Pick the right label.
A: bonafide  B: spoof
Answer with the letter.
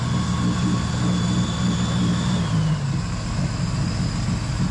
A